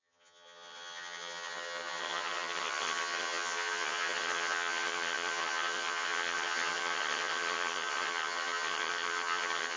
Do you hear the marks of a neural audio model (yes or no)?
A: yes